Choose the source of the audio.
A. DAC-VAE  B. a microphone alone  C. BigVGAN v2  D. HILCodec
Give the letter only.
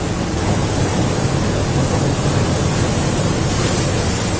B